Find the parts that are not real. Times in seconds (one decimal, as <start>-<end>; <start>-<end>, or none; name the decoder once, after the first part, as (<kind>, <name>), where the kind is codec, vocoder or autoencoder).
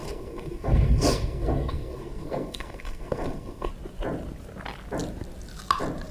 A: 0.0-3.7 (codec, SNAC)